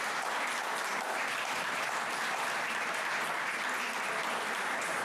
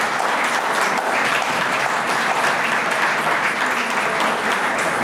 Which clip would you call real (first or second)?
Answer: second